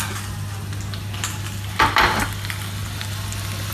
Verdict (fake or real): real